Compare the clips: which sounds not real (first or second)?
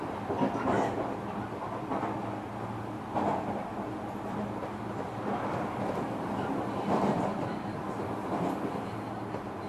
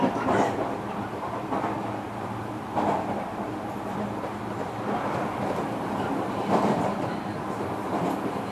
second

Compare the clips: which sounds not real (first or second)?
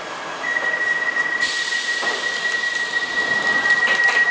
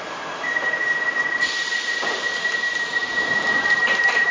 second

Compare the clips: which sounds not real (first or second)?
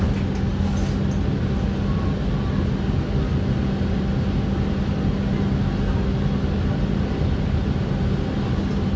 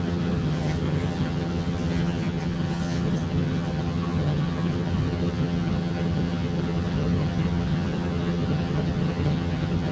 second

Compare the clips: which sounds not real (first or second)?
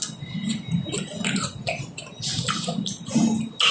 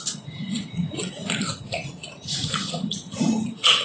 second